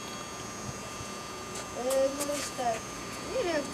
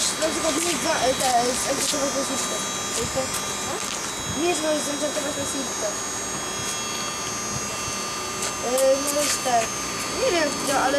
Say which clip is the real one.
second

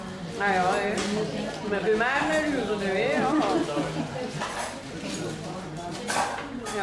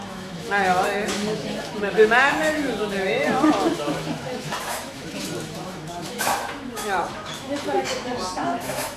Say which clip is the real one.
first